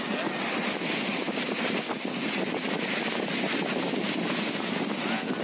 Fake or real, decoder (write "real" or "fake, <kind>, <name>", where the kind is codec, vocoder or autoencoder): real